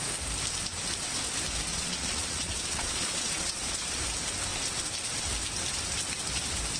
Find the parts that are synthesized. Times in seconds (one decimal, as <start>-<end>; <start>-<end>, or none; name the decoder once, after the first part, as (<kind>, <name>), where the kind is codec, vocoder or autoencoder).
1.7-4.0 (vocoder, Vocos)